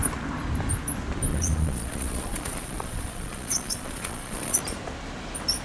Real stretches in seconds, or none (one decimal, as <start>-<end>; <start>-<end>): 0.0-1.3; 4.6-5.6